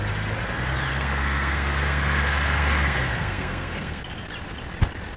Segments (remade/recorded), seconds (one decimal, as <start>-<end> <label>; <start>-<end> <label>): 0.0-0.9 recorded; 0.9-4.0 remade; 4.0-5.2 recorded